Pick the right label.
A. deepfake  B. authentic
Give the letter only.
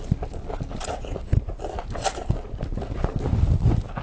B